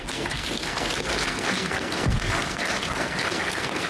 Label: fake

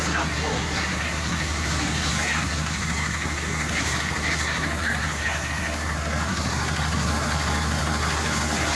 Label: fake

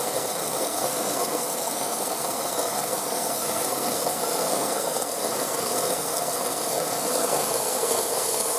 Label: fake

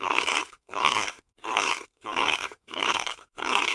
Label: fake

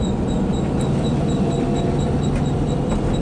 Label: real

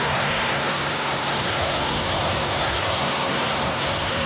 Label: fake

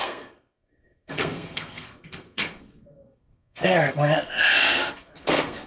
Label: fake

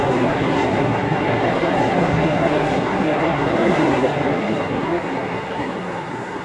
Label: fake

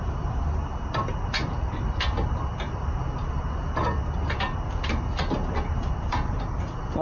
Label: real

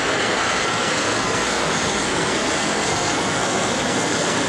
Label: fake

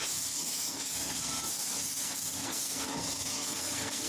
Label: fake